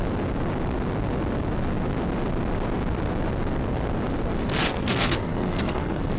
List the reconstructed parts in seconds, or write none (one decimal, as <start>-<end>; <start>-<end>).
4.7-6.2